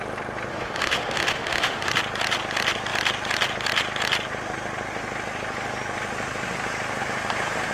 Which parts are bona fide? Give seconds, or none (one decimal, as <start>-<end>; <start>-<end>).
0.0-0.5; 1.9-7.7